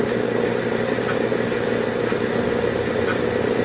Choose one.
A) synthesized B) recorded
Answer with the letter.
B